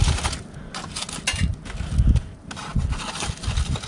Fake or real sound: real